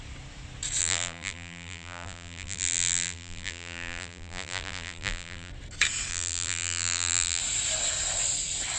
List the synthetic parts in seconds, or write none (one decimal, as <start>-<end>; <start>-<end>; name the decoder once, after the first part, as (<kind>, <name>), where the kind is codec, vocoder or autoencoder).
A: 0.8-5.5 (vocoder, BigVGAN v2); 6.1-7.4

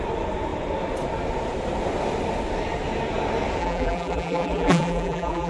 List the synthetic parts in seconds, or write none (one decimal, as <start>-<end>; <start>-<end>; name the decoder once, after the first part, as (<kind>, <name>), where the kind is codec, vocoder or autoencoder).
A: 3.6-5.5 (vocoder, BigVGAN v2)

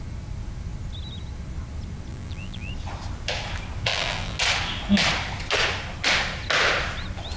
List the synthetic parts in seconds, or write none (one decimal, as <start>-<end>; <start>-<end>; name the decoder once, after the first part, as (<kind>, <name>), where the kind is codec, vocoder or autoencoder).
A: 2.1-2.7 (vocoder, BigVGAN v2); 3.9-4.4

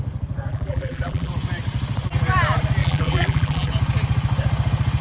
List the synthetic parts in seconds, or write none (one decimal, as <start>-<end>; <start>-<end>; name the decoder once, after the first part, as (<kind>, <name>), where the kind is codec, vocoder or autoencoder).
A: 0.5-1.3 (vocoder, BigVGAN v2); 2.8-3.7

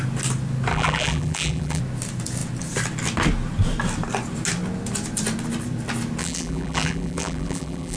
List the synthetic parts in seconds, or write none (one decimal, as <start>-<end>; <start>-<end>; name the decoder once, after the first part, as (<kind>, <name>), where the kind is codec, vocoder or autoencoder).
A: 0.7-1.8 (vocoder, BigVGAN v2); 6.2-8.0

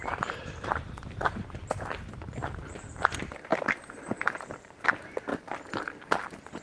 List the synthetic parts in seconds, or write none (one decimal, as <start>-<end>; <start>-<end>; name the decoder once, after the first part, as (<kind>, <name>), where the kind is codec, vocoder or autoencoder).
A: 0.0-5.3 (vocoder, BigVGAN v2)